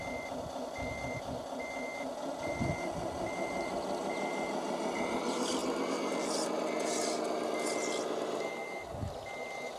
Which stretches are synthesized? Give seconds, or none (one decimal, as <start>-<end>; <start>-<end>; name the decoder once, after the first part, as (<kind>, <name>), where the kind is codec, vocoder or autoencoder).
none